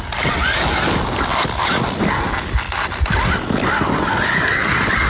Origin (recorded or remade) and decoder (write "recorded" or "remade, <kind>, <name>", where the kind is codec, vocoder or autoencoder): recorded